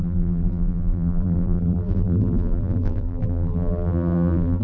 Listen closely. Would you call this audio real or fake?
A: fake